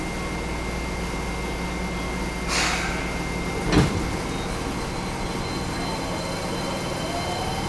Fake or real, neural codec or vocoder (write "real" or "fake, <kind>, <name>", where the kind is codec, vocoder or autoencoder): real